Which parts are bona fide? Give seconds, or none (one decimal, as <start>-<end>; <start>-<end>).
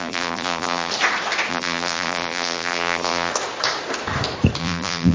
0.9-1.5; 3.3-4.6